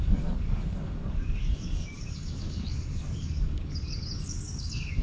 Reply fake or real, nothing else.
fake